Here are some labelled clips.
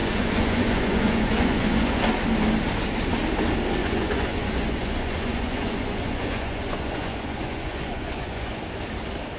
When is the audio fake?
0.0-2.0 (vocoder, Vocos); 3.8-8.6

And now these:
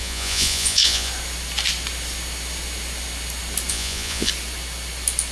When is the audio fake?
0.0-1.1 (vocoder, Vocos); 3.7-4.3

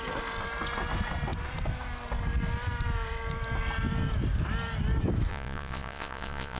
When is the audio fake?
5.3-6.6 (vocoder, Vocos)

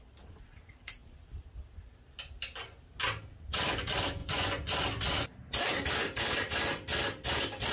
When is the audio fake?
4.2-4.8 (vocoder, Vocos)

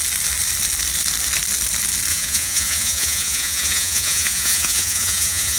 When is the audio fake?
2.1-5.6 (vocoder, Vocos)